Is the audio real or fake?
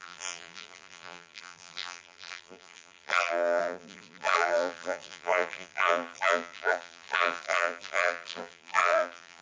fake